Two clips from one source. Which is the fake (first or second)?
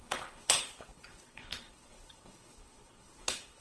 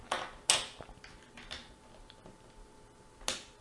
first